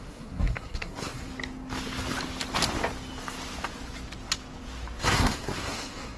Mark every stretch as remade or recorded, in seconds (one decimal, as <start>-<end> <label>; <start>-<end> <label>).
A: 0.0-1.3 remade; 1.3-5.0 recorded; 5.0-6.2 remade